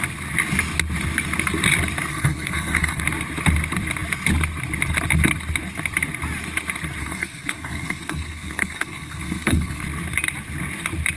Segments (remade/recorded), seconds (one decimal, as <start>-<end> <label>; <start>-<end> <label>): 0.0-2.1 recorded; 2.1-3.0 remade; 3.0-7.0 recorded; 7.0-9.8 remade; 9.8-11.2 recorded

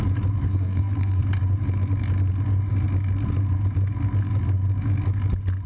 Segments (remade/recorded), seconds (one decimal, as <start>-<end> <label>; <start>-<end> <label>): 0.0-0.5 recorded; 0.5-1.2 remade; 1.2-5.7 recorded

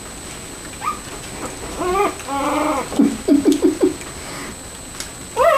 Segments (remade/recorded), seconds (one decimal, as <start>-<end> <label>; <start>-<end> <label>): 0.0-5.6 recorded

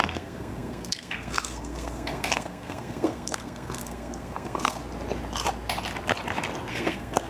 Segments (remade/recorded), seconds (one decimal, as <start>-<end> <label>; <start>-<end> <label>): 0.0-4.8 remade; 4.8-6.7 recorded; 6.7-7.3 remade

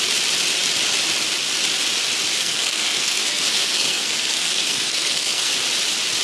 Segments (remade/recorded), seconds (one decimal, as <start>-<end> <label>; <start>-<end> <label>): 0.0-2.3 recorded; 2.3-5.5 remade; 5.5-6.2 recorded

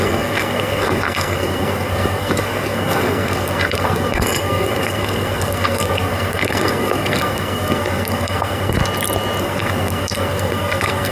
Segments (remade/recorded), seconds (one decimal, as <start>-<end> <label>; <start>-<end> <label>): 0.0-8.8 remade; 8.8-9.4 recorded; 9.4-11.1 remade

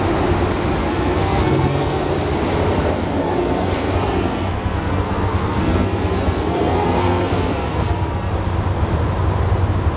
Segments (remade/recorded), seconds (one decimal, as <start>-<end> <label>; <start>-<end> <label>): 0.0-0.8 recorded; 0.8-2.1 remade; 2.1-3.2 recorded; 3.2-8.3 remade; 8.3-10.0 recorded